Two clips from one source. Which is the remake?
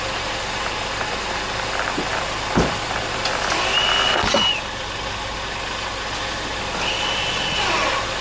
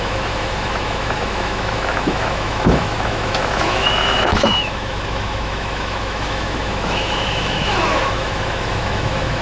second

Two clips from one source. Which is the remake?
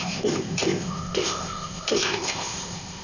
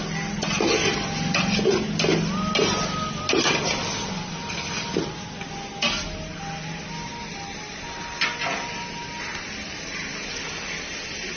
first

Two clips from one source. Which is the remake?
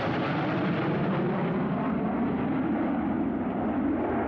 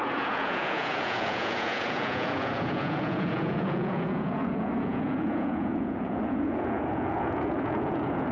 second